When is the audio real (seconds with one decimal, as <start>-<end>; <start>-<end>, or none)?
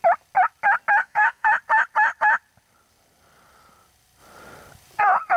0.0-1.0; 1.5-5.4